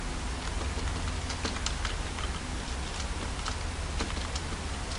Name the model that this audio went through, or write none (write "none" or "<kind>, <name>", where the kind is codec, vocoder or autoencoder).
none